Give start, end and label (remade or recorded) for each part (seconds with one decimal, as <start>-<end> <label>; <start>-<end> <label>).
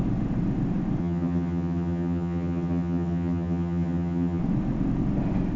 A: 0.0-1.0 recorded; 1.0-4.4 remade; 4.4-5.6 recorded